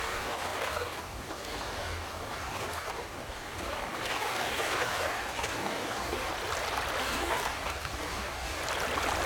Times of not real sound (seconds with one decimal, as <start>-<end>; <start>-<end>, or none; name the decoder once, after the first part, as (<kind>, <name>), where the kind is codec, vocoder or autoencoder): 0.0-6.3 (codec, DAC); 7.0-8.6